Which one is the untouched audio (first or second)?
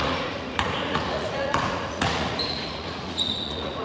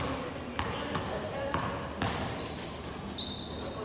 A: second